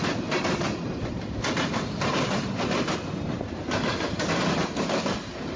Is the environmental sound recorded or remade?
recorded